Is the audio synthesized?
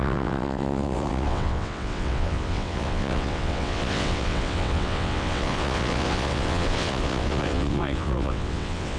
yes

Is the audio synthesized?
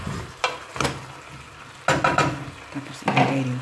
no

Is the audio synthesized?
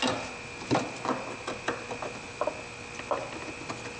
no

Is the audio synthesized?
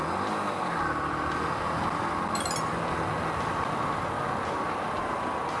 no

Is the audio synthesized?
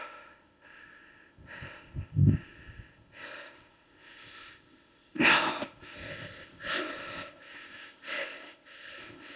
yes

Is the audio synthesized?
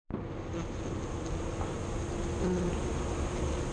no